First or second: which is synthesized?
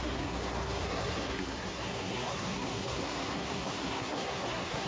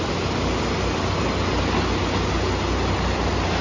first